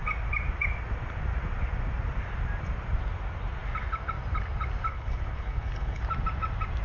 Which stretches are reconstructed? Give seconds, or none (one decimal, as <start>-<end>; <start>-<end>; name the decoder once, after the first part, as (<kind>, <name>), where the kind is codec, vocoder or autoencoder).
4.9-6.0 (codec, HILCodec)